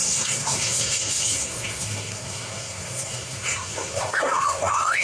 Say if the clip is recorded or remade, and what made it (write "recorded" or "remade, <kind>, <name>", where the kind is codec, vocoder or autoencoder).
remade, codec, SNAC